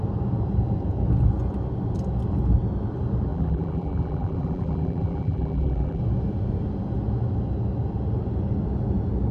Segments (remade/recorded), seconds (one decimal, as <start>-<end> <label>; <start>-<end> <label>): 0.0-3.3 recorded; 3.3-6.0 remade; 6.0-9.3 recorded